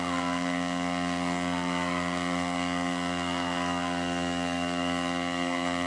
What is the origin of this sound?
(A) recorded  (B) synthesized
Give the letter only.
B